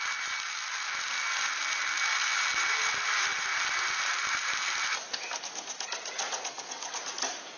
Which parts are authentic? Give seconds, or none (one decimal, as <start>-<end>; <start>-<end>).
0.0-6.2; 6.9-7.6